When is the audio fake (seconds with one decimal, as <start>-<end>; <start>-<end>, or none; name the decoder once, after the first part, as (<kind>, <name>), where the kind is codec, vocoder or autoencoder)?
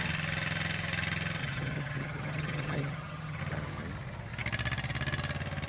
1.4-3.4 (vocoder, HiFi-GAN)